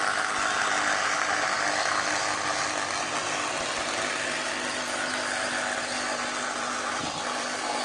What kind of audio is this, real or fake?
real